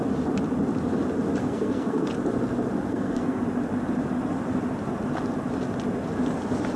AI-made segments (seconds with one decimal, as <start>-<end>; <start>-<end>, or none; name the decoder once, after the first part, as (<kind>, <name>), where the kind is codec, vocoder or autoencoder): 1.4-2.1 (codec, SNAC); 2.9-3.4

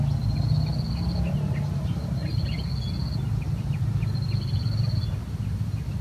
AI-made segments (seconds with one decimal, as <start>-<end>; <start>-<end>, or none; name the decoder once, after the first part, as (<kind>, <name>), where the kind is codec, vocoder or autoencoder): none

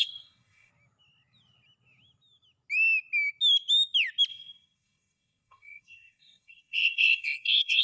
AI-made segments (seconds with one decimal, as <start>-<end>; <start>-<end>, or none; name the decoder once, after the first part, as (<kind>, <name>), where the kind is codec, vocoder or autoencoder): 0.0-0.7 (codec, SNAC); 4.3-7.8